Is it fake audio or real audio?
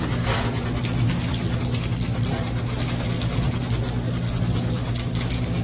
real